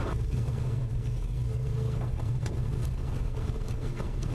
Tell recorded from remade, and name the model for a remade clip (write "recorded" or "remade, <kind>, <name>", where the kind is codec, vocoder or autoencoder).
remade, codec, SNAC